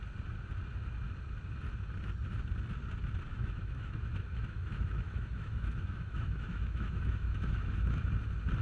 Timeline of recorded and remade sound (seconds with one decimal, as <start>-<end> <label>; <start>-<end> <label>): 0.0-3.3 recorded; 3.3-8.1 remade; 8.1-8.6 recorded